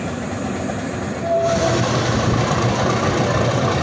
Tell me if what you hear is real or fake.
fake